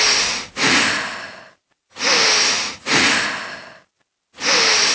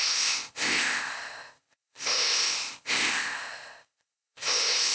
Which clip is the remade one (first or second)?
second